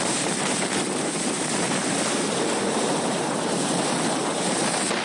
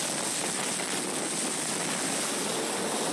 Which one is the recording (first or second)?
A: second